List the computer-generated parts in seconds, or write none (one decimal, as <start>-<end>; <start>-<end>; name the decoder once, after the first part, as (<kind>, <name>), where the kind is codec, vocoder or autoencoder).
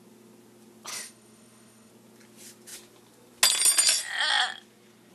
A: 0.9-1.9 (autoencoder, DAC-VAE)